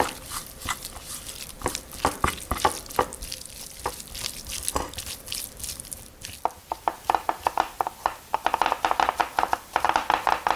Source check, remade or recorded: remade